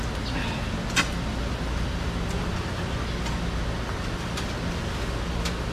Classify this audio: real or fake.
real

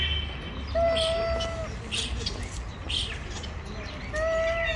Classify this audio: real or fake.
real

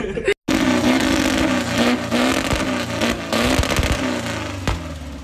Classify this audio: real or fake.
real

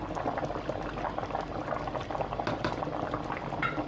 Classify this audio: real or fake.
real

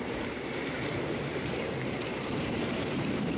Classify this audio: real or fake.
fake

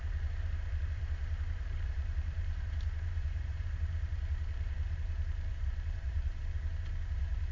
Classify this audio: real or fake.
fake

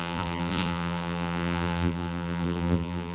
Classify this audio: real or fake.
fake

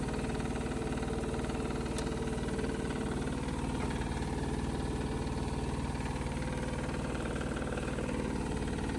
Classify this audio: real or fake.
fake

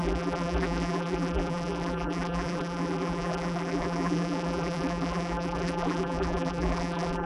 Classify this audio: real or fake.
fake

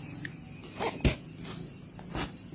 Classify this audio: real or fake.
real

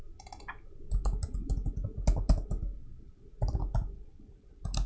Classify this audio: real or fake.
real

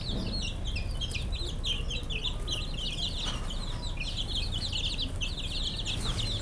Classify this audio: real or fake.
real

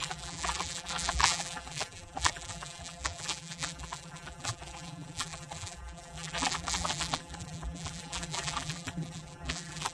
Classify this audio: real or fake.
fake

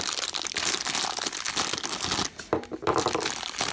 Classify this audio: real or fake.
real